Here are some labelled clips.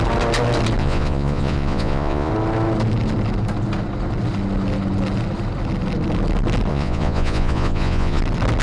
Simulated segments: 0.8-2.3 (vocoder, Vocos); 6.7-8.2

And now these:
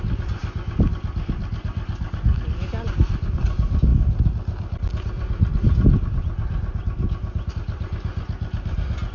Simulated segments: none

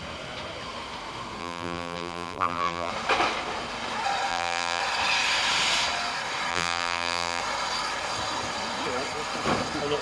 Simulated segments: 1.4-2.9 (vocoder, BigVGAN v2); 4.3-4.8; 6.5-7.4

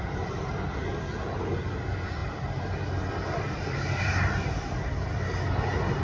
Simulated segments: none

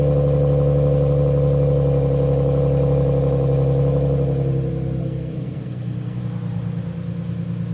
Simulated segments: 5.0-6.2 (codec, SNAC)

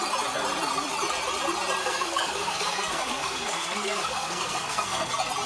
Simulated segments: 1.8-5.1 (codec, SNAC)

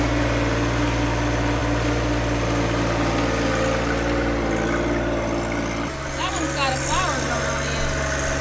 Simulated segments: none

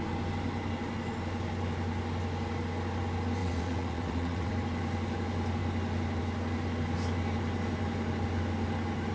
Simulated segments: 3.4-4.5 (vocoder, WaveNeXt)